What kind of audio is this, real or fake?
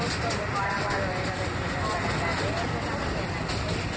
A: real